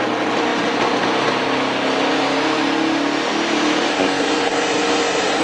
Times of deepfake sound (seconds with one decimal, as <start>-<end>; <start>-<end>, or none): 3.9-5.4